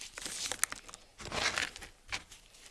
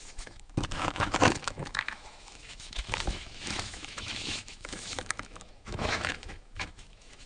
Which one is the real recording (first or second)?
first